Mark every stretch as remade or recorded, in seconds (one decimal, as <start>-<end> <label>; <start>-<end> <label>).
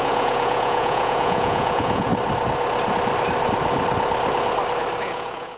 0.0-2.1 remade; 2.1-5.0 recorded; 5.0-5.6 remade